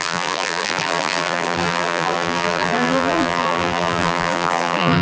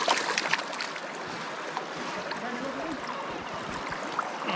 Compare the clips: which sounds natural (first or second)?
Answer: second